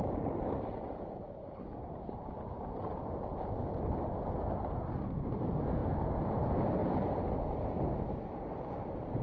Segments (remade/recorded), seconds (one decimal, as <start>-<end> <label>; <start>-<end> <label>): 0.0-9.2 recorded